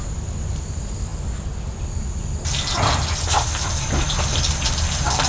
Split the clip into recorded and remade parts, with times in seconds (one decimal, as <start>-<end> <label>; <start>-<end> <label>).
0.0-1.1 remade; 1.1-4.3 recorded; 4.3-5.3 remade